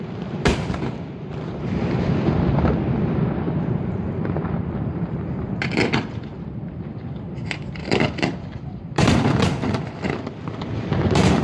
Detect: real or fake fake